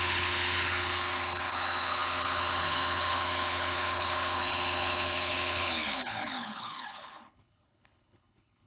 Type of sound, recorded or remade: remade